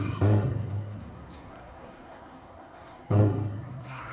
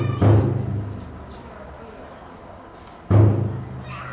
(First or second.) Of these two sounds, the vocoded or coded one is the first